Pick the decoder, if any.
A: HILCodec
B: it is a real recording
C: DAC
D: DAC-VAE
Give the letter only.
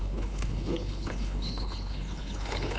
A